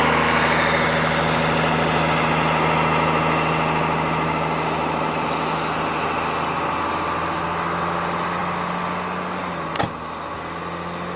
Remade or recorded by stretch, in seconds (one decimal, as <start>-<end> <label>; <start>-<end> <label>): 0.0-11.2 recorded